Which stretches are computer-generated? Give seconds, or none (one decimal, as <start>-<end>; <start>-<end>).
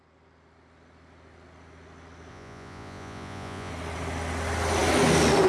2.3-3.7